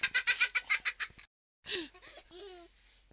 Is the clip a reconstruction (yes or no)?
no